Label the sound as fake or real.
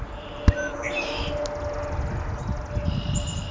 real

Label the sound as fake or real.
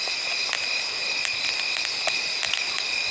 real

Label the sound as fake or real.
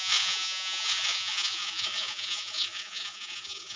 fake